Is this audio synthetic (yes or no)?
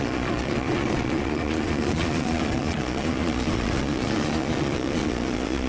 yes